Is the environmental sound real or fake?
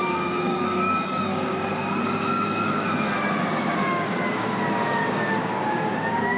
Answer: fake